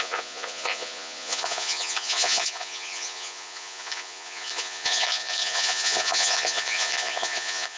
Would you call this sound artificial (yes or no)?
yes